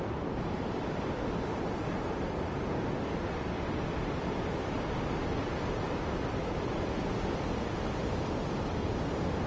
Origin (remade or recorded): recorded